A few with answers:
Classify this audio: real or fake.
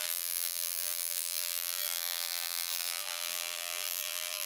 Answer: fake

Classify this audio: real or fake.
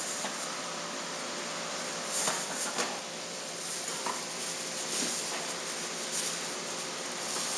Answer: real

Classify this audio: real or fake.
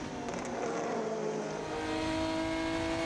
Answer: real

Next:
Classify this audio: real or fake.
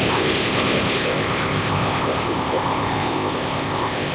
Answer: fake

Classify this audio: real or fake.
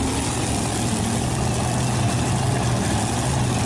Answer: real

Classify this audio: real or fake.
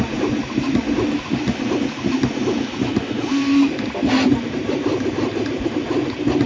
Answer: real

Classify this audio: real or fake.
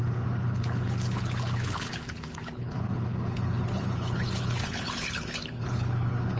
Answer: fake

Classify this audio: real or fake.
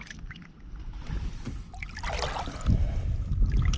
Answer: real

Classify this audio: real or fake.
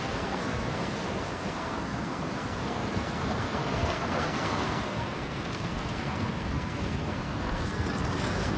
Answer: fake